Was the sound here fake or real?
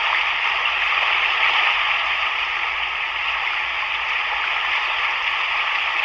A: real